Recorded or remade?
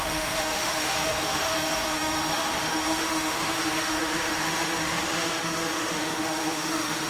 remade